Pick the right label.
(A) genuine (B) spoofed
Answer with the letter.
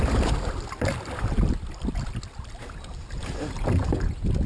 A